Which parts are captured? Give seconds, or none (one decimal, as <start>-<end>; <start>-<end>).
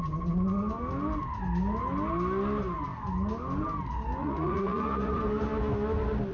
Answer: 0.0-4.2; 5.2-6.3